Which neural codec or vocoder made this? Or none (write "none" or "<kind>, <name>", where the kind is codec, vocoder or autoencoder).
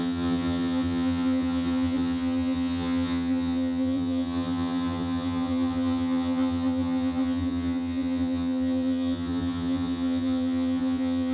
vocoder, HiFi-GAN